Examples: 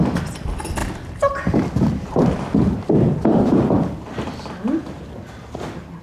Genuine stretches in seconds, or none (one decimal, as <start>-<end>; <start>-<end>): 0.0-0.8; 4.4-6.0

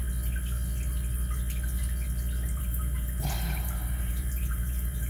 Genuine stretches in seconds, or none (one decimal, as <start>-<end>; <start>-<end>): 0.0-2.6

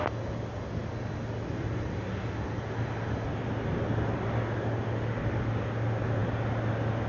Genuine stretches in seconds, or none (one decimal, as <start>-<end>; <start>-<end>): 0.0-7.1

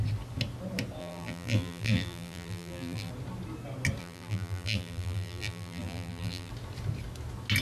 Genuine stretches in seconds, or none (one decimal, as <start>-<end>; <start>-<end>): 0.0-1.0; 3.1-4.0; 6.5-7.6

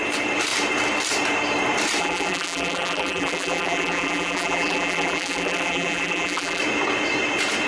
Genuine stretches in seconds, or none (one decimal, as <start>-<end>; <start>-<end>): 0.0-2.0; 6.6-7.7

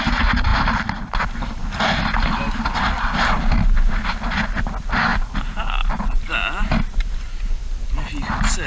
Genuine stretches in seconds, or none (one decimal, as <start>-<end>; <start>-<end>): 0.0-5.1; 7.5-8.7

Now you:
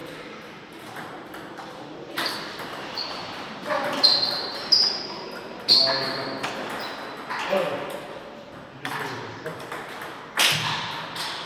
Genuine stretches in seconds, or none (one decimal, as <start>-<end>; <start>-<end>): 5.0-11.5

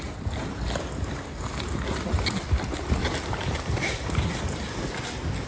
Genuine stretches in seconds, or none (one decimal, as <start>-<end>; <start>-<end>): 0.0-3.0; 4.4-5.5